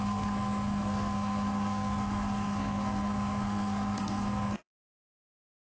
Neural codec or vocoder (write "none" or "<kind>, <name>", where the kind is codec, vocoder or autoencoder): codec, SNAC